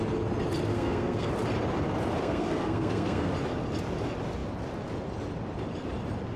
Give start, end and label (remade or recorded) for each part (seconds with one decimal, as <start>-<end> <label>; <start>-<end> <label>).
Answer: 0.0-0.7 recorded; 0.7-1.3 remade; 1.3-2.2 recorded; 2.2-3.3 remade; 3.3-6.4 recorded